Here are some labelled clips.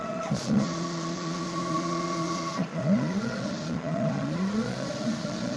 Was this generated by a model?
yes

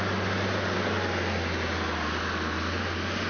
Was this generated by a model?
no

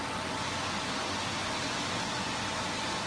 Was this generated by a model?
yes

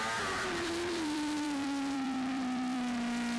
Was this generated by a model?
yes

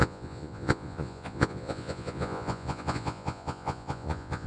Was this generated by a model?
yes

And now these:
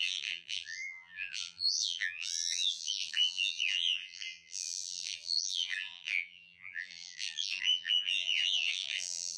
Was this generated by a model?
yes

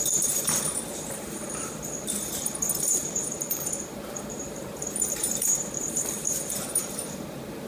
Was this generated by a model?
yes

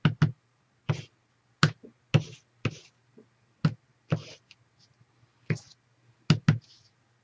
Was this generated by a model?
no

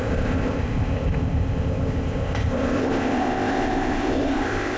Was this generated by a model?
yes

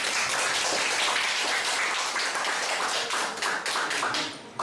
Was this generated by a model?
yes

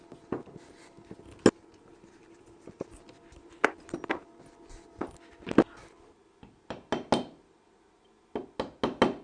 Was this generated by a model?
no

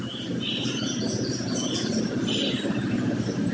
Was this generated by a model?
yes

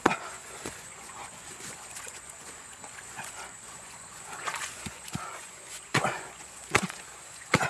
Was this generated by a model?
yes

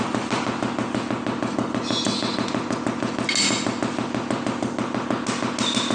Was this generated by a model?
no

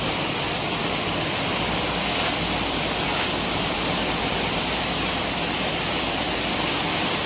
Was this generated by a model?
yes